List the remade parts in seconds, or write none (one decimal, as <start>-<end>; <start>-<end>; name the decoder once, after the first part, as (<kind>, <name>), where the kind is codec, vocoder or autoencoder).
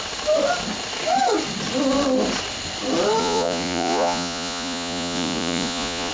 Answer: 3.2-6.1 (vocoder, Vocos)